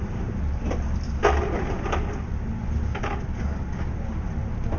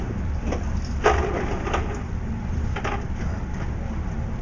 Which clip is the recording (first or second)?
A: first